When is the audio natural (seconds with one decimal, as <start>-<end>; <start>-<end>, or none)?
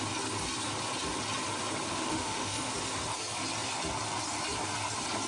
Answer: 0.0-1.9; 2.7-5.3